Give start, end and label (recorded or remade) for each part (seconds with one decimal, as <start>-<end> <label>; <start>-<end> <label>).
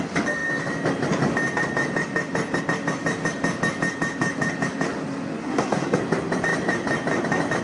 0.0-5.4 recorded; 5.4-6.0 remade; 6.0-7.6 recorded